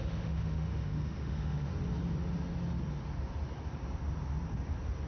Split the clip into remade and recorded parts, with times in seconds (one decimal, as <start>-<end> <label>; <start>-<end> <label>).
0.0-1.7 remade; 1.7-5.1 recorded

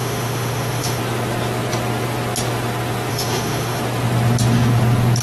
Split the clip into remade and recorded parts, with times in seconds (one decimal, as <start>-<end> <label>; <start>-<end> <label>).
0.0-1.0 remade; 1.0-3.1 recorded; 3.1-3.8 remade; 3.8-5.2 recorded

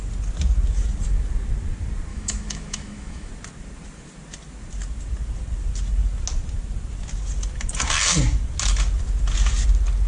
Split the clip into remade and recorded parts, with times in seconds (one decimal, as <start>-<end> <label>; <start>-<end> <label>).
0.0-2.1 recorded; 2.1-3.3 remade; 3.3-10.1 recorded

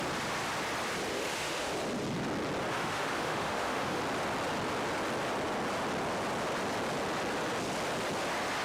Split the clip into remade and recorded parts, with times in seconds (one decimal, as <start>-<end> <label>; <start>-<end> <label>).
0.0-1.1 recorded; 1.1-1.7 remade; 1.7-2.7 recorded; 2.7-4.0 remade; 4.0-8.6 recorded

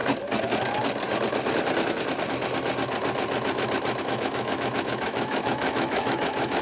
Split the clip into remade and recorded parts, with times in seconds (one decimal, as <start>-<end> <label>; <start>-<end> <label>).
0.0-4.0 recorded; 4.0-6.6 remade